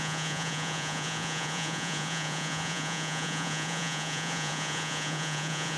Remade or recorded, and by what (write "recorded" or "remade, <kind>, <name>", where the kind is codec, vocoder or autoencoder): remade, vocoder, Vocos